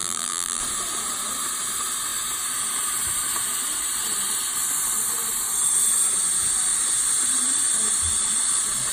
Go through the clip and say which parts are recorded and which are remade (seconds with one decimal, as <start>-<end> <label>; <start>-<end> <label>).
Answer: 0.0-0.6 remade; 0.6-8.9 recorded